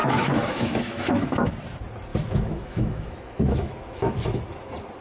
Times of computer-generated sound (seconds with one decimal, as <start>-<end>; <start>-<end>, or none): 0.0-1.5; 2.1-4.4